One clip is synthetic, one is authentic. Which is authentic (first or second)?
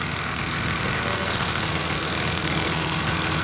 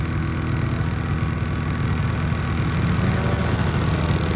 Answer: second